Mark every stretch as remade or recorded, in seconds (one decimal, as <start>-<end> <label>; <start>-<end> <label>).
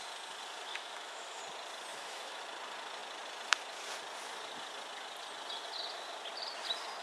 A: 0.0-0.7 recorded; 0.7-1.4 remade; 1.4-1.9 recorded; 1.9-2.4 remade; 2.4-7.0 recorded